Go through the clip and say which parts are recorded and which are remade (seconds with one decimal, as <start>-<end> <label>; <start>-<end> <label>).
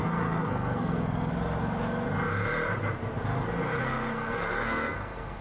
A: 0.0-1.3 remade; 1.3-3.8 recorded; 3.8-5.4 remade